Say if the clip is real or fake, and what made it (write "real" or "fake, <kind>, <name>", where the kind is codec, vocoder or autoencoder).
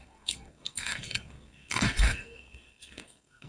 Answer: fake, codec, SNAC